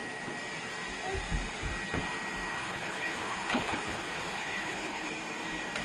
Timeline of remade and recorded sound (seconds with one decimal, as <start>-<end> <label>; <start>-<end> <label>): 0.0-2.6 recorded; 2.6-5.1 remade; 5.1-5.8 recorded